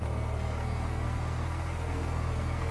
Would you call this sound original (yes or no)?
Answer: no